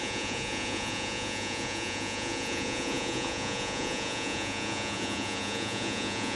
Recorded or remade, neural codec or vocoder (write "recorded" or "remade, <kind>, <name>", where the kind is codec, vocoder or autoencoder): remade, vocoder, Vocos